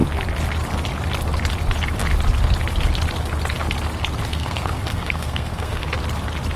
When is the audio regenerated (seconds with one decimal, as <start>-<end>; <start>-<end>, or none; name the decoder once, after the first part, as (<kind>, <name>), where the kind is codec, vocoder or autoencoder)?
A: 4.3-5.9 (codec, SNAC)